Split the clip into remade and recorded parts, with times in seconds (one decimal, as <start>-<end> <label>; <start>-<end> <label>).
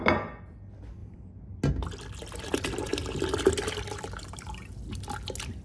0.0-5.6 recorded